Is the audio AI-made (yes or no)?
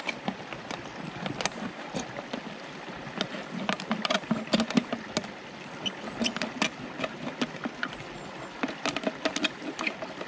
no